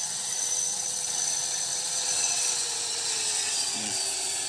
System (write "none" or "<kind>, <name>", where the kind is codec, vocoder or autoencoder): vocoder, WaveNeXt